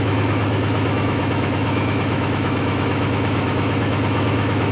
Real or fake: fake